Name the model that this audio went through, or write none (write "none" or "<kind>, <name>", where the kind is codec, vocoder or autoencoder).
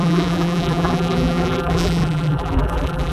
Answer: vocoder, BigVGAN v2